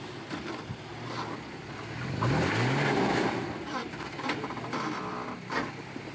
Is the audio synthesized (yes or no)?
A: no